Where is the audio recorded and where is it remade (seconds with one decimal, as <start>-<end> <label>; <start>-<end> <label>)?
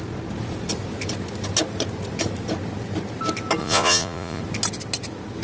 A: 0.0-3.6 recorded; 3.6-4.4 remade; 4.4-5.4 recorded